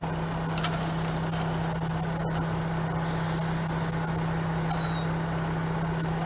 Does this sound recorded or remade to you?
recorded